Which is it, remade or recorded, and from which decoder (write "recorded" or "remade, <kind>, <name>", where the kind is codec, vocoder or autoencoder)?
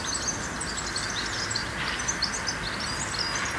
recorded